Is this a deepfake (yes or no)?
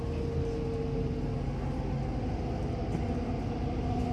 no